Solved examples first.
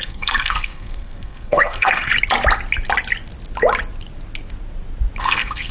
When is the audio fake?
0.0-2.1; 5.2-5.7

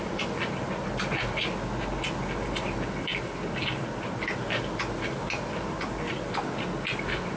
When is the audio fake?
none

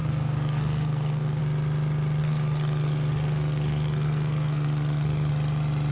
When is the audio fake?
0.0-1.4; 2.2-5.3

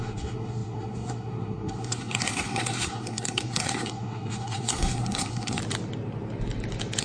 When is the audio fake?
0.0-5.6

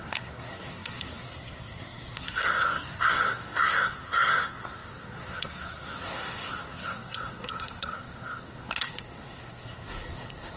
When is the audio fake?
0.0-10.6

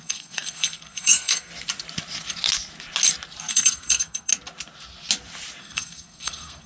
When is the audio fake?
0.0-1.5; 3.5-4.3; 5.6-6.7

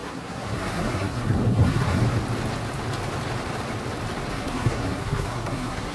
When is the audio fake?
0.0-2.0; 4.3-5.9

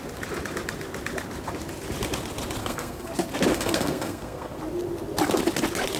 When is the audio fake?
2.6-3.1; 3.5-4.6